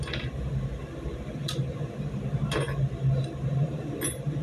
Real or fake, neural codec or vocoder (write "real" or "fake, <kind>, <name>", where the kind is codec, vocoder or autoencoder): real